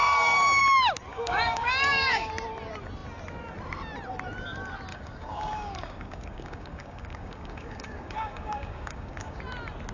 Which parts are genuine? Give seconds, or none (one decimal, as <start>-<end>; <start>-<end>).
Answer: 0.6-1.1; 2.3-4.9; 9.4-9.9